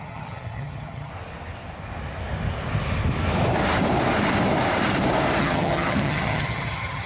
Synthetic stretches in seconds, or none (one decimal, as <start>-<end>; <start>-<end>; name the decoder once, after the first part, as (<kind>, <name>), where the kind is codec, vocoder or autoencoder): 0.0-1.1 (vocoder, HiFi-GAN); 5.4-7.1